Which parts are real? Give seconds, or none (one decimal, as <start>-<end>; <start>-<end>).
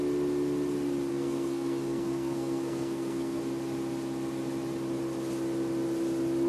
0.0-1.1; 3.4-6.5